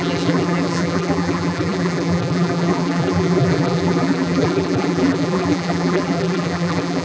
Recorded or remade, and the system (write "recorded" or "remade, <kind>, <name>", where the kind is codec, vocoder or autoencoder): remade, vocoder, BigVGAN v2